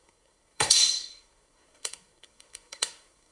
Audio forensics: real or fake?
fake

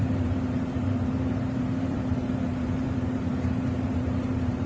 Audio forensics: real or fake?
fake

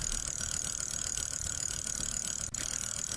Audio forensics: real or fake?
real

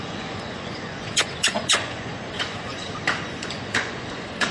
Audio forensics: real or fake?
fake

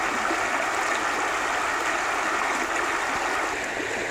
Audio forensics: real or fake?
real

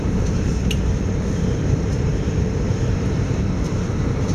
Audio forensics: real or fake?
fake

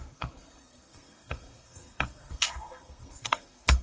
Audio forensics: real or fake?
fake